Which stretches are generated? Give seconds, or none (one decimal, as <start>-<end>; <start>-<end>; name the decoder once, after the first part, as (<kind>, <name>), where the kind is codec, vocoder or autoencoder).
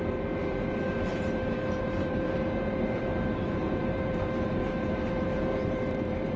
0.0-6.4 (vocoder, BigVGAN v2)